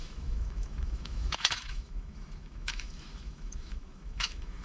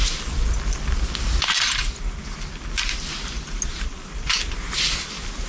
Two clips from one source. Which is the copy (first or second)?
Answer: first